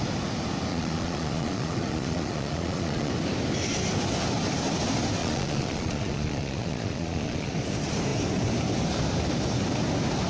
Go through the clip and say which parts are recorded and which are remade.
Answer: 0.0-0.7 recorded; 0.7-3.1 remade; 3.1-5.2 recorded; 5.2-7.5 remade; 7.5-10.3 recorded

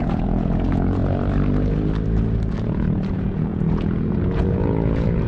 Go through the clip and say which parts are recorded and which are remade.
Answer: 0.0-1.0 remade; 1.0-2.6 recorded; 2.6-5.3 remade

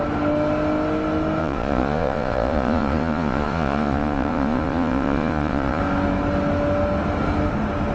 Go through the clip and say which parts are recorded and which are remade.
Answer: 0.0-1.4 recorded; 1.4-5.8 remade; 5.8-7.9 recorded

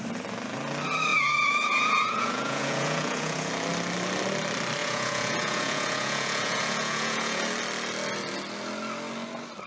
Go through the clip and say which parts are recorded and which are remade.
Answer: 0.0-1.1 recorded; 1.1-3.5 remade; 3.5-4.8 recorded; 4.8-7.4 remade; 7.4-9.7 recorded

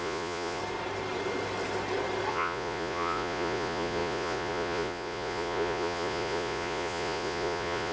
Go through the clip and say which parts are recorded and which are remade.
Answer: 0.0-0.6 remade; 0.6-2.3 recorded; 2.3-7.9 remade

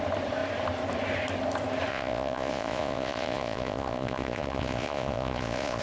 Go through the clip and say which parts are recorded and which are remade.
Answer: 0.0-1.9 recorded; 1.9-5.8 remade

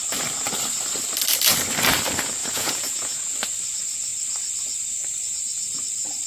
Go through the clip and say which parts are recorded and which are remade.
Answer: 0.0-2.4 recorded; 2.4-3.2 remade; 3.2-6.3 recorded

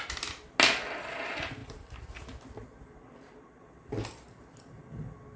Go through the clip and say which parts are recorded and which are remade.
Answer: 0.0-5.4 recorded